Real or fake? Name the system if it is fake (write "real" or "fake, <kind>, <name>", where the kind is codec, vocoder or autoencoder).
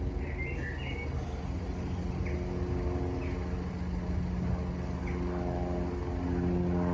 real